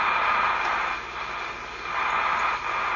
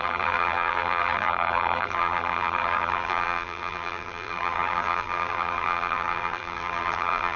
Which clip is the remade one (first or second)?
second